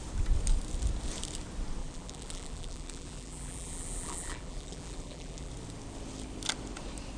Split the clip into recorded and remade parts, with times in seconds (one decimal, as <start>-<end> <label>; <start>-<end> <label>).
0.0-1.8 recorded; 1.8-5.5 remade; 5.5-7.2 recorded